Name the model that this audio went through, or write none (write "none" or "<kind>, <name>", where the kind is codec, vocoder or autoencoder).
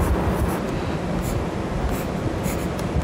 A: none